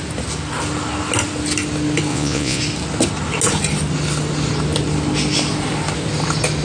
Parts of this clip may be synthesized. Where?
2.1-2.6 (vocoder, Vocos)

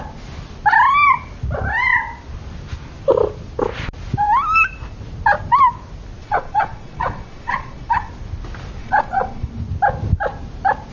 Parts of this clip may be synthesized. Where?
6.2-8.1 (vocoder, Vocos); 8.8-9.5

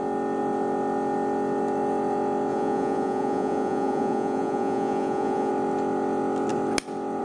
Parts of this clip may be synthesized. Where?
2.5-5.5 (vocoder, Vocos)

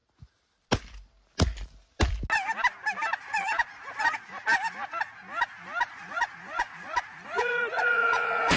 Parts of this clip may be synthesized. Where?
3.2-4.3 (vocoder, Vocos); 5.9-8.6